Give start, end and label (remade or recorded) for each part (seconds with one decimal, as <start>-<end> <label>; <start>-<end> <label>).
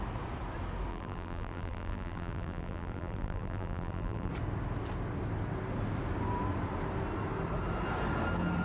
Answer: 0.0-0.9 recorded; 0.9-4.3 remade; 4.3-8.6 recorded